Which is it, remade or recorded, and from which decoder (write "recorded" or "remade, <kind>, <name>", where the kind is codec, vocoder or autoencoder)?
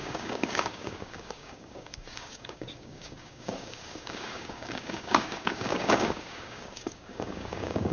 remade, codec, DAC